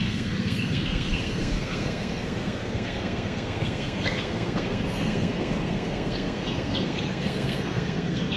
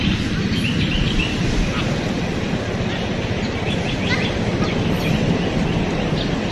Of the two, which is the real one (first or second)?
second